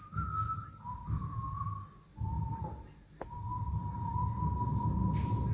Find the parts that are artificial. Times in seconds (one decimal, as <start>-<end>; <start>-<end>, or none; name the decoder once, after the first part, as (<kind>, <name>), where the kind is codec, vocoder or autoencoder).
none